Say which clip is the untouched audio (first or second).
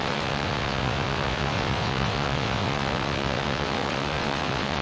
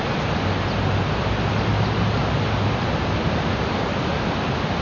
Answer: second